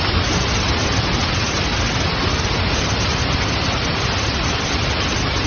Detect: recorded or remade recorded